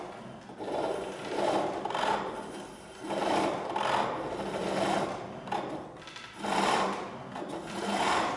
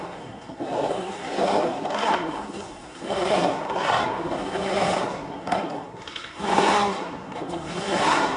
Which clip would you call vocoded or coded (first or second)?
second